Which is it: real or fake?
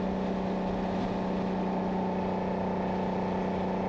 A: real